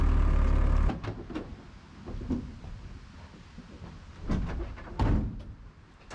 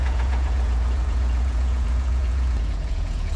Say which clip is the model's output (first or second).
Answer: second